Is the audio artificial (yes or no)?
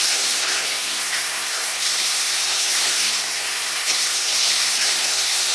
yes